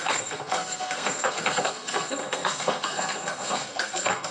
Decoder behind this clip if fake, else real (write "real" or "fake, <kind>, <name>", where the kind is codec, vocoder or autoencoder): fake, codec, SNAC